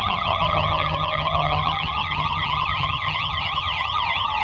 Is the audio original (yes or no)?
no